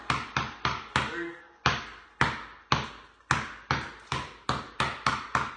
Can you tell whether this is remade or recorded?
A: recorded